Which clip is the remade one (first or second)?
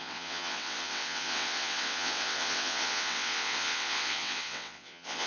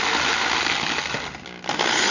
first